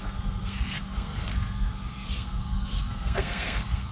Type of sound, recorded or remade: remade